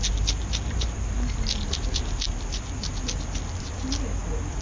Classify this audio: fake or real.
real